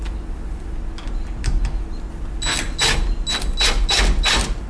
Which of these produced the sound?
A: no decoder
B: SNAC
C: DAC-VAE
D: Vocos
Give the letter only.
A